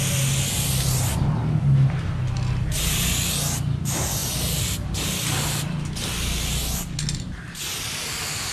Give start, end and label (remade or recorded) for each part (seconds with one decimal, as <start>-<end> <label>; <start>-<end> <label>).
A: 0.0-8.5 recorded